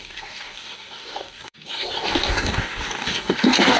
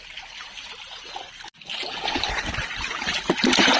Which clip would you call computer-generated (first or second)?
first